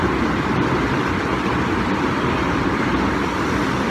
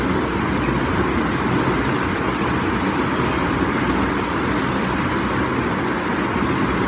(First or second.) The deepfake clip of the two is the first